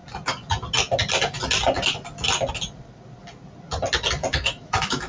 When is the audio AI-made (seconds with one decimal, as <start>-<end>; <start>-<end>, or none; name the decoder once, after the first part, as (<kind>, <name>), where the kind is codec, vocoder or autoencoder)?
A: 4.3-5.1 (autoencoder, DAC-VAE)